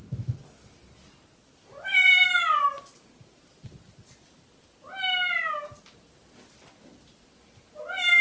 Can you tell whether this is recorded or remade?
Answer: recorded